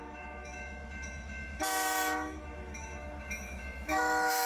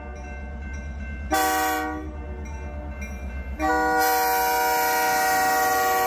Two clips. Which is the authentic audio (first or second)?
second